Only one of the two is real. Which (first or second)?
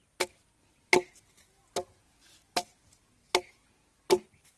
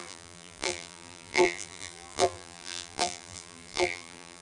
first